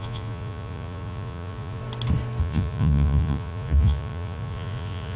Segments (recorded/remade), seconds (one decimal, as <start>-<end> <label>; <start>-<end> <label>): 0.0-1.8 remade; 1.8-2.4 recorded; 2.4-5.2 remade